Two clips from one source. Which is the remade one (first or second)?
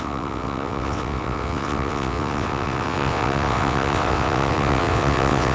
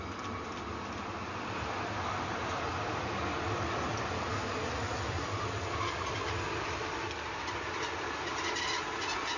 first